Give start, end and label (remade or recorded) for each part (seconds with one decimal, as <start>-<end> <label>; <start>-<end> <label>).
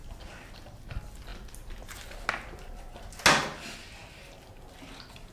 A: 0.0-5.3 recorded